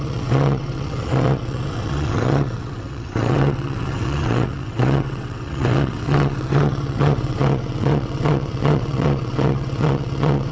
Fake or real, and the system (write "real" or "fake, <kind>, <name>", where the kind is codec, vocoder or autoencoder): fake, vocoder, WaveNeXt